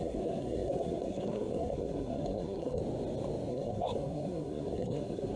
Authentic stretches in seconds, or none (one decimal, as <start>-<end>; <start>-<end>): 2.8-3.5